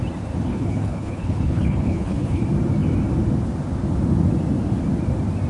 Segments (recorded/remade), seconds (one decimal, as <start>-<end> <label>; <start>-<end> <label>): 0.0-0.5 recorded; 0.5-2.4 remade; 2.4-5.5 recorded